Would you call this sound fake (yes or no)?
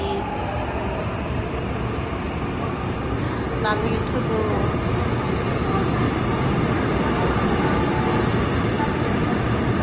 no